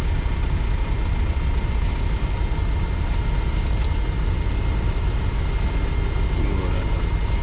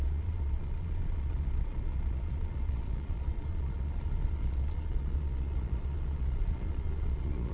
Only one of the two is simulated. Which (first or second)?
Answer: second